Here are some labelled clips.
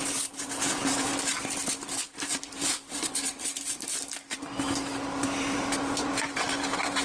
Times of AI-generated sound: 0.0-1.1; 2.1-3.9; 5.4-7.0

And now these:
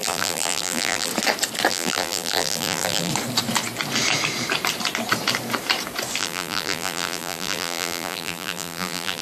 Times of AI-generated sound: 0.0-1.1; 1.7-3.1; 6.2-9.2

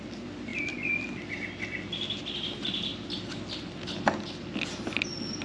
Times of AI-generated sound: none